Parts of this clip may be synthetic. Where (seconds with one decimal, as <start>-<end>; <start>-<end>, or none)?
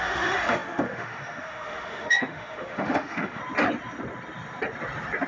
0.0-3.4